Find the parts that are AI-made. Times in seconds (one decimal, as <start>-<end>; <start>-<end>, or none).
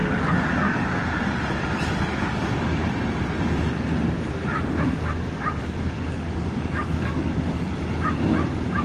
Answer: 0.0-1.2; 2.1-2.8; 4.5-7.4